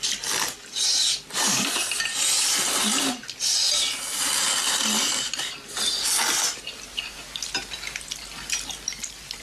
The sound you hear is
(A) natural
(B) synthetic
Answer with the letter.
A